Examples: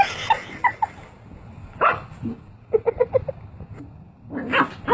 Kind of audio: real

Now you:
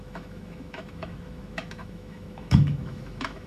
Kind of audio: fake